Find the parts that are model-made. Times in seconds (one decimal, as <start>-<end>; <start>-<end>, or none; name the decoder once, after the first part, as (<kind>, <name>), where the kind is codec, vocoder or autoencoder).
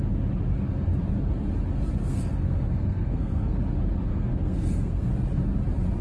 2.1-3.6 (codec, SNAC); 4.1-5.1